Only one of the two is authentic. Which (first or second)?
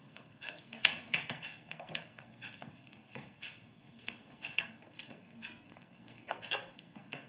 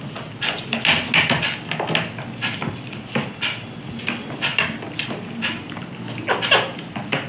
second